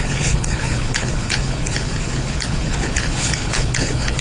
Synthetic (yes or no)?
yes